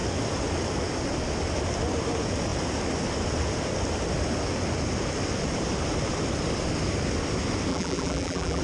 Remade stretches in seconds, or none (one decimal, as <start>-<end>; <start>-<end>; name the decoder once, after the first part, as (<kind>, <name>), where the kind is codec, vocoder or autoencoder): 7.7-8.6 (vocoder, BigVGAN v2)